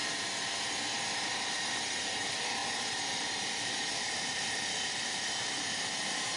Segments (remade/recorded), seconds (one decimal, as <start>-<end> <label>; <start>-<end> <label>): 0.0-1.0 recorded; 1.0-6.4 remade